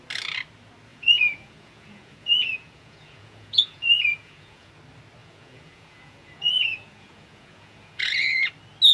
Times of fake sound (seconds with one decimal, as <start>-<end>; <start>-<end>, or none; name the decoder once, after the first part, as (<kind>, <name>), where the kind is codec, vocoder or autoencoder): 0.9-4.7 (vocoder, Vocos); 5.2-8.5